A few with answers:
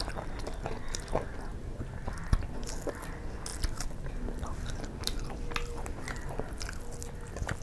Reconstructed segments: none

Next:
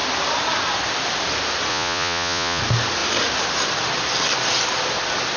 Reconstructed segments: 1.7-2.6

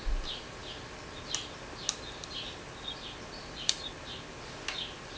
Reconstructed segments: none

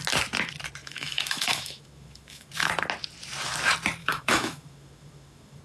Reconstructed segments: 0.8-2.5; 4.0-5.6

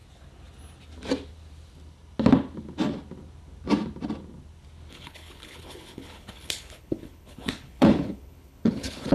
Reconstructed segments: 4.9-9.1

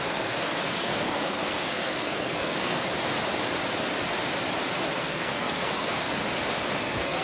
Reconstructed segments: 0.0-2.9; 5.0-6.2; 6.8-7.2

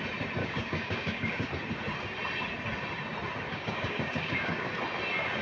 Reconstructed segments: 0.4-1.5; 3.5-4.7

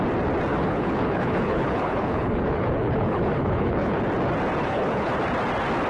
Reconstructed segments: 0.5-4.0; 4.6-5.1